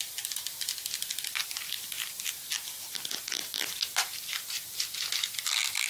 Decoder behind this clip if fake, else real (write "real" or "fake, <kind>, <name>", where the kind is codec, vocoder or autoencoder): real